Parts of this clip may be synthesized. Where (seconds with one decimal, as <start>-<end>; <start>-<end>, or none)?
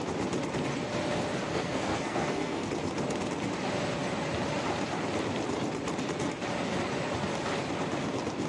1.5-2.7